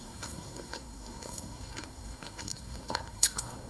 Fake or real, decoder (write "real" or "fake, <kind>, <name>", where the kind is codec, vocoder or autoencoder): fake, codec, SNAC